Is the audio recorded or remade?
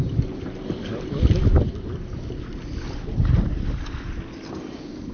recorded